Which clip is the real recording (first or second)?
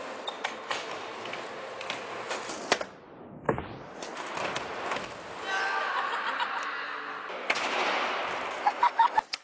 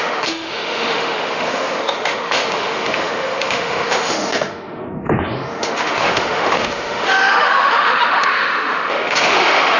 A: first